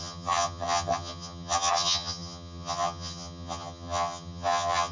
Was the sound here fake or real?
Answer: fake